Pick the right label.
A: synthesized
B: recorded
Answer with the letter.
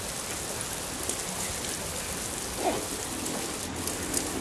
B